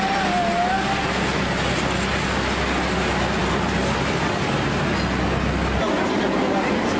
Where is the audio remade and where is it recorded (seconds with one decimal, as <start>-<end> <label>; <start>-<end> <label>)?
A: 0.0-7.0 recorded